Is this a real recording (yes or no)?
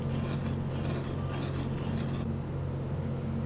yes